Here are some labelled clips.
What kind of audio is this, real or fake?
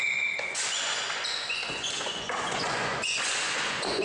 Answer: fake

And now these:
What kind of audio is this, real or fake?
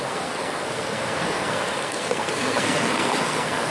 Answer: fake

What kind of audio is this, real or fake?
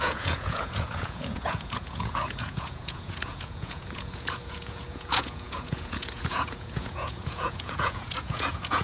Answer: fake